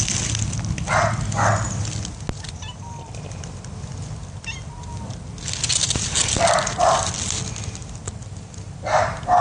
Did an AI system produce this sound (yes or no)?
no